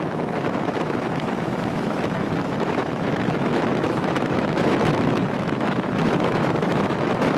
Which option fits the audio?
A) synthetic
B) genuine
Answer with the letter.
A